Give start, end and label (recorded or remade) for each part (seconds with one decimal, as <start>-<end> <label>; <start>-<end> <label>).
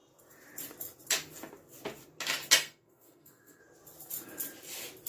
0.0-2.6 recorded; 2.6-3.6 remade; 3.6-5.1 recorded